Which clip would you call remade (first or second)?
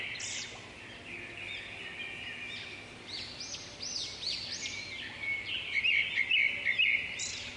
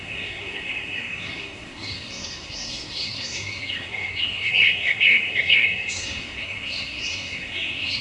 second